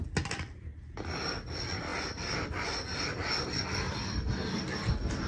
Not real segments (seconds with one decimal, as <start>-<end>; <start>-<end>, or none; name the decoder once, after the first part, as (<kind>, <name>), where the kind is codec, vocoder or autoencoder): none